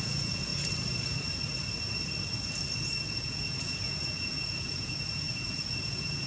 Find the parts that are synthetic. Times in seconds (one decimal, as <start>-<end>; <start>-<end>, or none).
0.0-0.5; 3.1-6.3